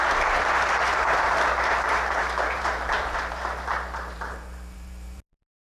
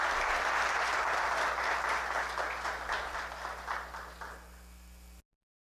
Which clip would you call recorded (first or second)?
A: second